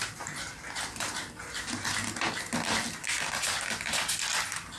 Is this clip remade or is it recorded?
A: recorded